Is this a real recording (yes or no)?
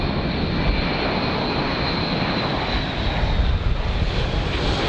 yes